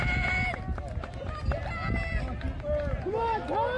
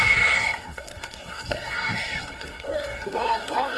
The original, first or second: first